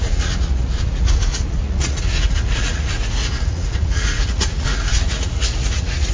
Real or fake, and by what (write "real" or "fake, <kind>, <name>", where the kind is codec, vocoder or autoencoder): fake, vocoder, Vocos